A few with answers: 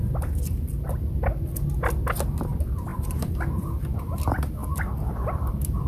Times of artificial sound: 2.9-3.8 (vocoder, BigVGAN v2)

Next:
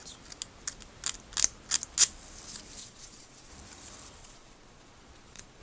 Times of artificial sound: 2.8-3.5 (vocoder, Vocos); 4.2-5.6

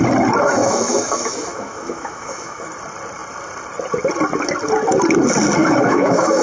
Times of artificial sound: 0.6-2.7 (autoencoder, DAC-VAE); 5.6-6.4

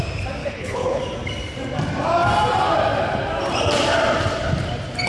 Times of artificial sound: 0.4-1.0 (codec, HILCodec)